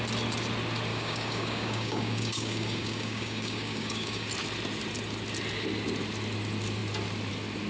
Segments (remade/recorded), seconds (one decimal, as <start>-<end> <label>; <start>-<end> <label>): 0.0-0.9 recorded; 0.9-4.3 remade; 4.3-7.7 recorded